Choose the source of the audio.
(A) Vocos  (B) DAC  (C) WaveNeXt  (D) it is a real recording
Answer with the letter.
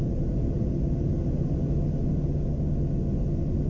D